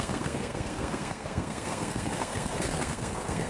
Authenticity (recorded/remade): remade